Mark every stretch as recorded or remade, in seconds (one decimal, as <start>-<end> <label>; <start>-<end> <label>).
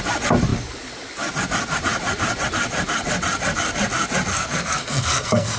0.0-4.3 recorded; 4.3-5.6 remade